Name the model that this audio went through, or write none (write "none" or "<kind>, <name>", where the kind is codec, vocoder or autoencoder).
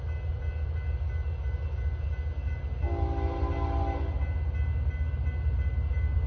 none